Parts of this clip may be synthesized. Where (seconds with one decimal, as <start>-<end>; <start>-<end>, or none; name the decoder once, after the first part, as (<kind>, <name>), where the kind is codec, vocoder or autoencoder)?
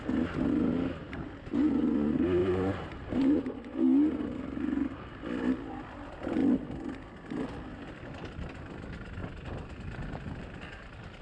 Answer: 1.0-1.8 (vocoder, BigVGAN v2); 2.4-5.2